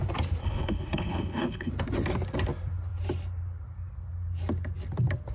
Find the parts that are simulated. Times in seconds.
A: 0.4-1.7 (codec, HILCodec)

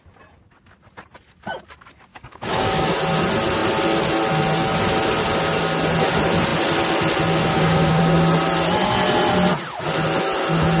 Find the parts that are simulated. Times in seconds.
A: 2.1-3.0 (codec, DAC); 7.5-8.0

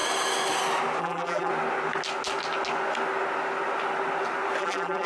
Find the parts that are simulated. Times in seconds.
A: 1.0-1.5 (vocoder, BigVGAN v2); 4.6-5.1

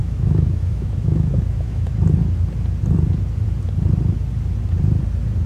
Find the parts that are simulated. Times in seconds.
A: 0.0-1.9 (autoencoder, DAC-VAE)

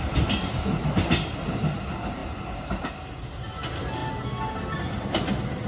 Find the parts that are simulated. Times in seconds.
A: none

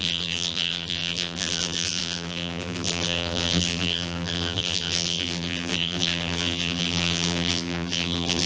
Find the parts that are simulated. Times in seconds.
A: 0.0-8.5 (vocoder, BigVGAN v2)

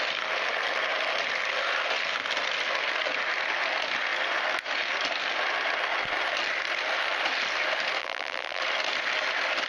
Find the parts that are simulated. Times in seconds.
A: 8.0-8.6 (vocoder, BigVGAN v2)